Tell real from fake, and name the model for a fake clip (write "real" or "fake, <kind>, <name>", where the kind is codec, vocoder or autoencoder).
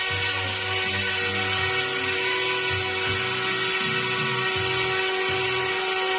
real